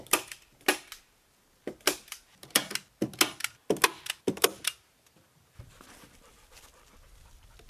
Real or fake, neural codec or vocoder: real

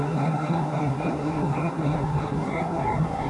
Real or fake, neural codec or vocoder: fake, codec, SNAC